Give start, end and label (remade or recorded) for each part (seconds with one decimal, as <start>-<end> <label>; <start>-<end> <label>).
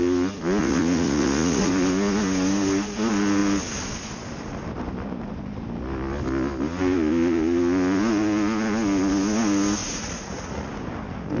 0.0-0.6 recorded; 0.6-1.7 remade; 1.7-9.8 recorded; 9.8-10.7 remade; 10.7-11.4 recorded